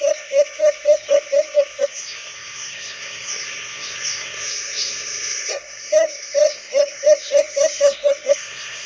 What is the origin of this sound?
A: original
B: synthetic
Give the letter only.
B